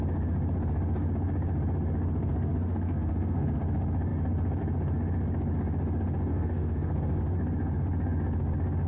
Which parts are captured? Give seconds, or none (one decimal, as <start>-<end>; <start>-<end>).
0.0-2.2; 3.6-6.3; 7.2-8.9